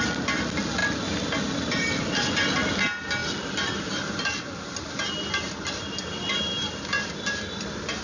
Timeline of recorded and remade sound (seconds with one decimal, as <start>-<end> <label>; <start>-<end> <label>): 0.0-8.0 recorded